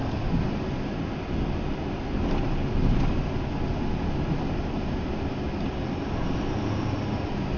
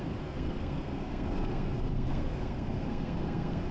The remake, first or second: second